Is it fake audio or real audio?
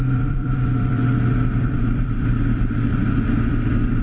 fake